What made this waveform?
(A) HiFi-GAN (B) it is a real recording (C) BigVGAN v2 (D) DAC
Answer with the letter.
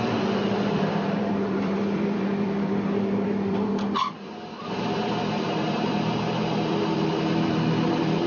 C